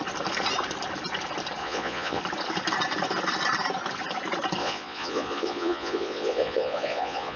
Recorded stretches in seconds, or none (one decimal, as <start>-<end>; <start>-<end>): 0.0-1.6; 2.2-4.6